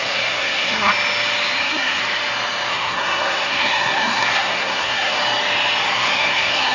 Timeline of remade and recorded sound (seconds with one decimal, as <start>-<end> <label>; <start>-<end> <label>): 0.0-0.9 remade; 0.9-1.6 recorded; 1.6-2.0 remade; 2.0-2.7 recorded; 2.7-5.2 remade; 5.2-5.9 recorded; 5.9-6.7 remade